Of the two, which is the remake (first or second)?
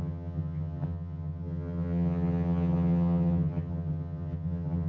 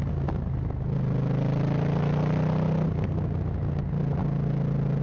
first